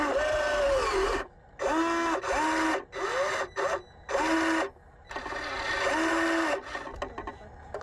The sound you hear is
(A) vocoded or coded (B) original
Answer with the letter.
B